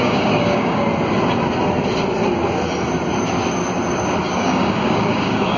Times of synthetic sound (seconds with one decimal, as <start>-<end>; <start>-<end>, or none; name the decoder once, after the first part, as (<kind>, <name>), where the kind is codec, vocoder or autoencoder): 0.0-0.9 (codec, DAC); 4.3-5.6